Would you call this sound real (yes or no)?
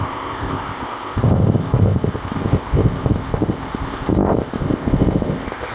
no